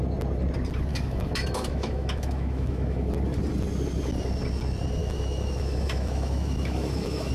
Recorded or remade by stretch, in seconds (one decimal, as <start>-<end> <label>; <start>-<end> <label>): 0.0-0.9 recorded; 0.9-3.1 remade; 3.1-5.0 recorded; 5.0-7.3 remade